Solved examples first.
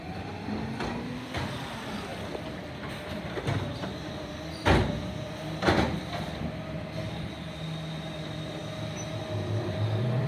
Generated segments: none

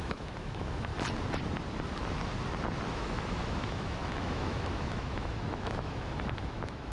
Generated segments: 0.0-0.9; 2.9-6.9

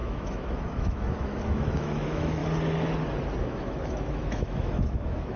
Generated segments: 0.0-2.4; 3.4-5.4

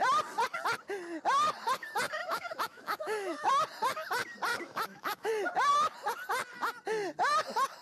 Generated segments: 2.2-3.5; 4.5-5.3